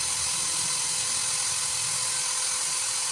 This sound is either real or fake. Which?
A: real